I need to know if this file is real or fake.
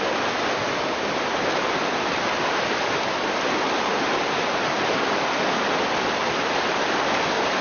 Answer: real